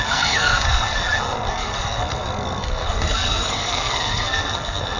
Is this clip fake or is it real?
fake